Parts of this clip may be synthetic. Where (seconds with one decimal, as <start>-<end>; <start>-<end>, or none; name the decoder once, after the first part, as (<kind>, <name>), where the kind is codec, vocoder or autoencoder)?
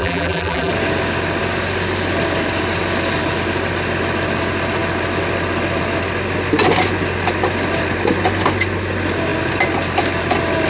0.0-0.7 (vocoder, BigVGAN v2)